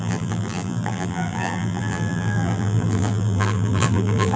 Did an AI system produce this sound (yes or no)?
yes